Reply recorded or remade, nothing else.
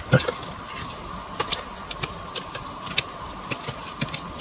recorded